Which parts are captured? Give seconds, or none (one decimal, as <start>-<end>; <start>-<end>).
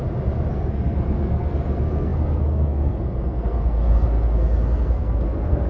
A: 0.0-0.5